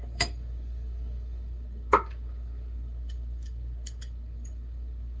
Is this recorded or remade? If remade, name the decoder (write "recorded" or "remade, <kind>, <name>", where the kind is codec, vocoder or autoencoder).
remade, codec, DAC